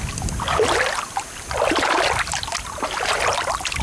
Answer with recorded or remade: recorded